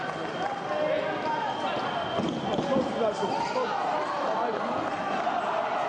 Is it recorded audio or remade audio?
recorded